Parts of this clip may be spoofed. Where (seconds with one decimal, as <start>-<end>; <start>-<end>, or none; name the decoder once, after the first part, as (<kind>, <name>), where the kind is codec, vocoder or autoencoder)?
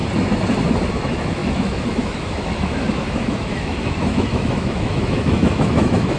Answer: 0.9-6.2 (autoencoder, DAC-VAE)